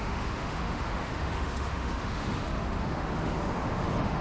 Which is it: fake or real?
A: fake